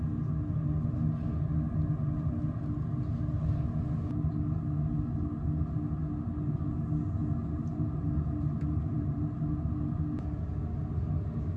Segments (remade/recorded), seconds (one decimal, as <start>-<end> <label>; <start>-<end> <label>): 0.0-7.4 recorded; 7.4-9.2 remade; 9.2-11.6 recorded